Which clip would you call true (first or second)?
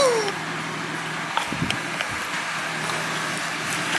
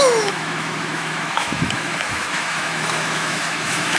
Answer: first